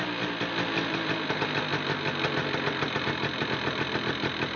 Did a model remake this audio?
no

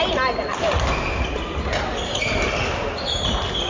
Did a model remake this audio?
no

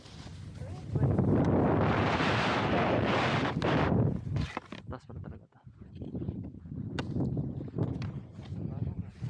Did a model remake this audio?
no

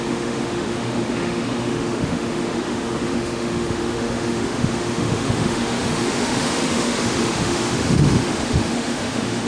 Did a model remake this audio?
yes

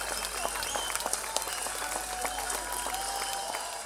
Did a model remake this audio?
no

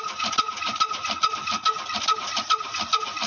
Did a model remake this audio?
no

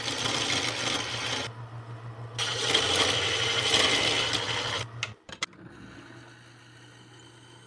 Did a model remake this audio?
no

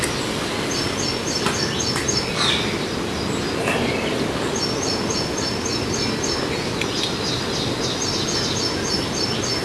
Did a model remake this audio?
no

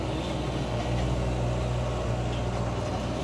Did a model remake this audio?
no